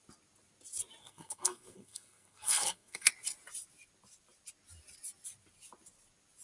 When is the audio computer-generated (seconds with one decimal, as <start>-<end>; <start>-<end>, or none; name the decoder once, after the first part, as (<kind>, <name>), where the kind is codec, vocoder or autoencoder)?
1.0-3.1 (codec, SNAC)